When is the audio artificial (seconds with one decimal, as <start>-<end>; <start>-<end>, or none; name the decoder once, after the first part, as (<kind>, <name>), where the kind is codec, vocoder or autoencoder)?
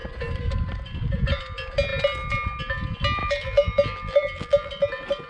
3.2-4.7 (vocoder, BigVGAN v2)